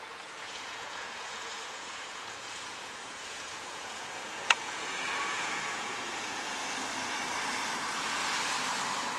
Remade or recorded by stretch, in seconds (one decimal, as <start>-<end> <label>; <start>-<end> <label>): 0.0-6.6 remade; 6.6-7.8 recorded; 7.8-8.2 remade; 8.2-9.2 recorded